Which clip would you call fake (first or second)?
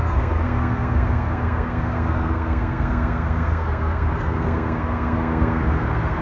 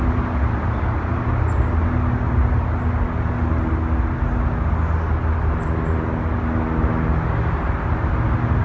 first